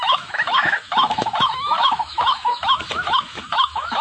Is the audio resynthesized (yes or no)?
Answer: yes